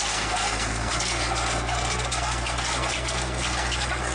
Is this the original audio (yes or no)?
no